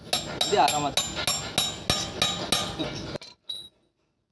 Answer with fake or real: real